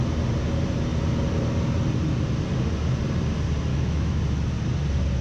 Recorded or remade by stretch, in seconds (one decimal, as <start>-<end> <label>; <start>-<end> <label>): 0.0-3.7 recorded; 3.7-4.2 remade; 4.2-5.2 recorded